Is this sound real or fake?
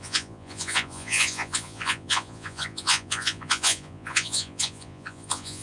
fake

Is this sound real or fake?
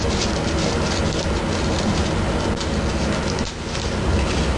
real